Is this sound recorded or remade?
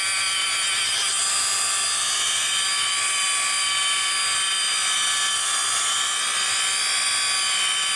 recorded